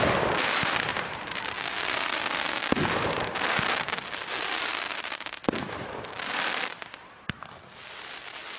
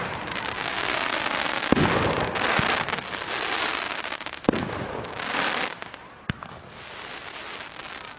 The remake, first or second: first